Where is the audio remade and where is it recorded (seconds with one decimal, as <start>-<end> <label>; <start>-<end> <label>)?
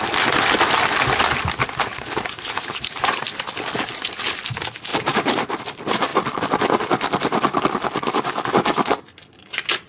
0.0-1.9 recorded; 1.9-3.2 remade; 3.2-4.9 recorded; 4.9-5.6 remade; 5.6-9.9 recorded